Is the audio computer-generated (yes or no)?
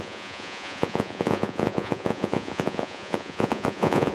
yes